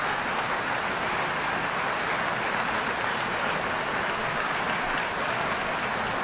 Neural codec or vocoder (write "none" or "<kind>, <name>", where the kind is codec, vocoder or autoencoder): none